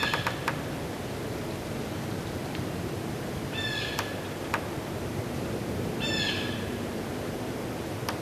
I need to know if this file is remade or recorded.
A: recorded